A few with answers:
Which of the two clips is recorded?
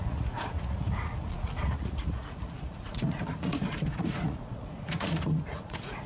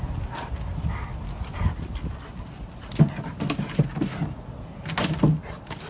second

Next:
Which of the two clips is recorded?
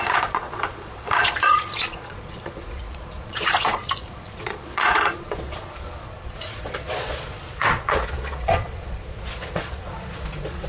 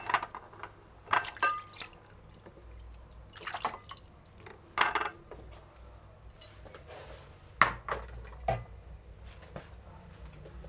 second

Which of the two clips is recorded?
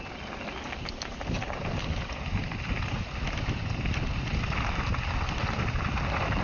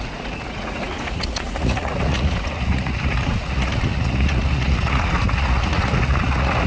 first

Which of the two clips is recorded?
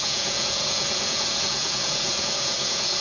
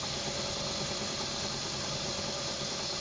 second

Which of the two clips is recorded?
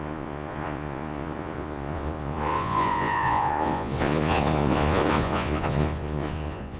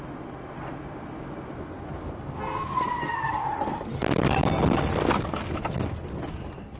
second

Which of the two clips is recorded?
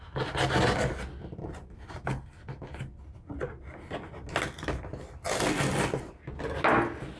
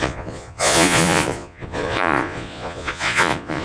first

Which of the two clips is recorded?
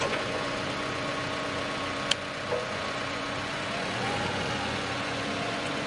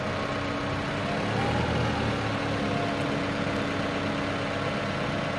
second